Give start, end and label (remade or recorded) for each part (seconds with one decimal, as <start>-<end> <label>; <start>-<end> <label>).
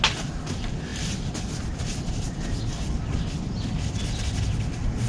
0.0-5.1 recorded